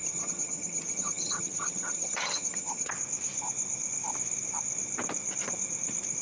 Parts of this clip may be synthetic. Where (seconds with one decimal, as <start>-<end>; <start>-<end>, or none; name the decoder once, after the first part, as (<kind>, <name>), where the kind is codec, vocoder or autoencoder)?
0.0-2.9 (vocoder, HiFi-GAN)